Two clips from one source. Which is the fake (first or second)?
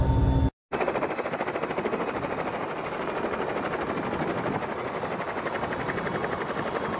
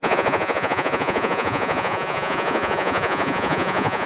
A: second